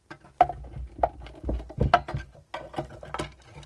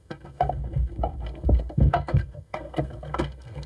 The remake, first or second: second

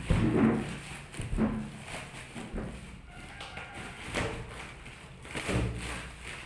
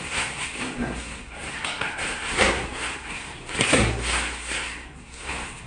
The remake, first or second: second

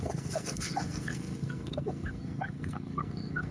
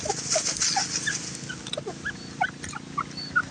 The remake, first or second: first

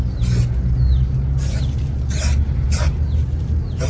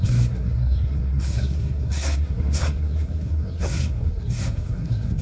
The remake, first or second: second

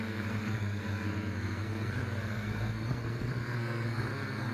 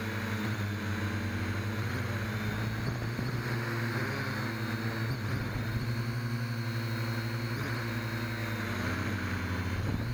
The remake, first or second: first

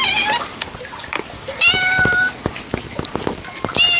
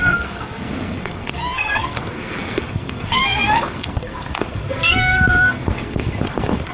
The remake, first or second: second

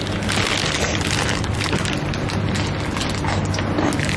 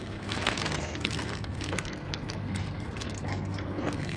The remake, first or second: second